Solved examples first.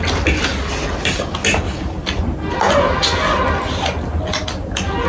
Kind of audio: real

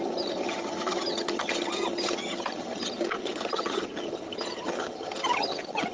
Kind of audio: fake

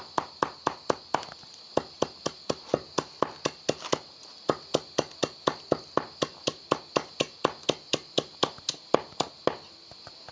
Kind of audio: real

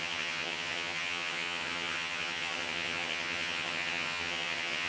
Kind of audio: fake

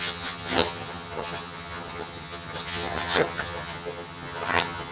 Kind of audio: fake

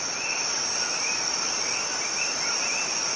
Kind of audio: real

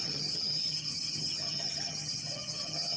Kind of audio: fake